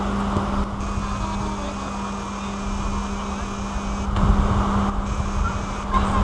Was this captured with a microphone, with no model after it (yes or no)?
yes